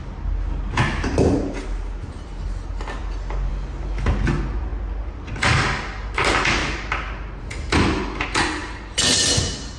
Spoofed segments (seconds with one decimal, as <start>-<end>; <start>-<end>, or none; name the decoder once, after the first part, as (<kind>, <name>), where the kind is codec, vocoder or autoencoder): none

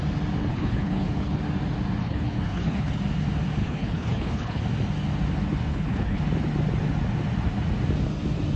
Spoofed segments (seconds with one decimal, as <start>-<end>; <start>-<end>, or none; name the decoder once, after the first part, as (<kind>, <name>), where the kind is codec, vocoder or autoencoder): 0.5-1.4 (codec, HILCodec); 2.0-3.0; 3.6-4.6; 5.7-6.2

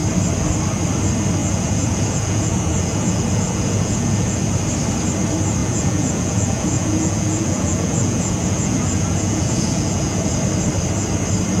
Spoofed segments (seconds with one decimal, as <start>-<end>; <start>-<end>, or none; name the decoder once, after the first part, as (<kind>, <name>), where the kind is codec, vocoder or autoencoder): 1.4-4.5 (vocoder, Vocos); 5.6-10.4

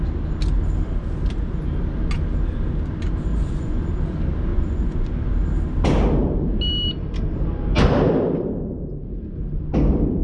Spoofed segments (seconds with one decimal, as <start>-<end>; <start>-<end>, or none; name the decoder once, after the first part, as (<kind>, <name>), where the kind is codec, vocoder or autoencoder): 3.3-3.9 (vocoder, Vocos); 4.5-5.1

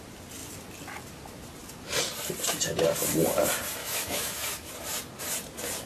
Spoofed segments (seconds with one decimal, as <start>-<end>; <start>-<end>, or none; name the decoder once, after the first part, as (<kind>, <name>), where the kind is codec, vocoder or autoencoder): 3.8-4.7 (autoencoder, DAC-VAE)

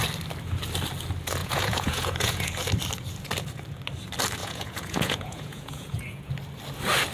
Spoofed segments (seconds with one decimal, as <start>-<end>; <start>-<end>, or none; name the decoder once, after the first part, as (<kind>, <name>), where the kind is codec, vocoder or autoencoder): 1.4-2.5 (vocoder, Vocos); 4.4-6.3

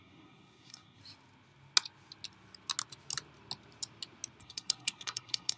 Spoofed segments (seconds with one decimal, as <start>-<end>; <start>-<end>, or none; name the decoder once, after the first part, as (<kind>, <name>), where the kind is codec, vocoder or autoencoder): 0.0-1.0 (codec, SNAC); 4.4-5.6